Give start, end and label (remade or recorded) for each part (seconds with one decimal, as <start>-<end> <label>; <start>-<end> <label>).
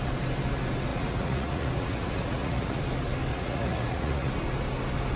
0.0-0.9 recorded; 0.9-2.8 remade; 2.8-3.3 recorded; 3.3-4.3 remade; 4.3-5.2 recorded